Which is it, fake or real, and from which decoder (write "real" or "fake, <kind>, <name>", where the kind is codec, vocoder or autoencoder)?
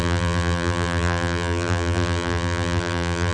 fake, vocoder, BigVGAN v2